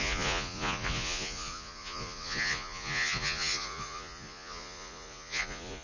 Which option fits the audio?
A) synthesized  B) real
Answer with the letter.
A